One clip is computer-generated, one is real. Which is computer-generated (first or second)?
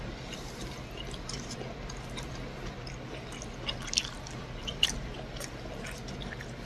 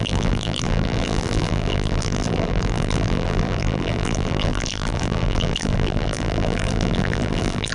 second